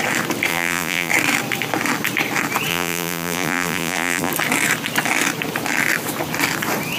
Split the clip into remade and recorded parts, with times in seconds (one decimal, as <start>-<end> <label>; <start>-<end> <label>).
0.0-0.5 recorded; 0.5-1.1 remade; 1.1-2.7 recorded; 2.7-4.3 remade; 4.3-7.0 recorded